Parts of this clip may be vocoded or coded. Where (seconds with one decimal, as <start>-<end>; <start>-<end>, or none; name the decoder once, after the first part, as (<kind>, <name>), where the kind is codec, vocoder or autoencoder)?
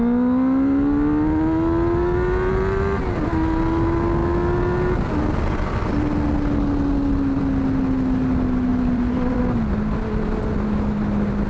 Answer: 8.7-9.4 (vocoder, BigVGAN v2)